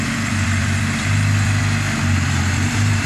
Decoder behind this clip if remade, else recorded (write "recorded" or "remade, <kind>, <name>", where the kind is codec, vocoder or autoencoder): remade, vocoder, BigVGAN v2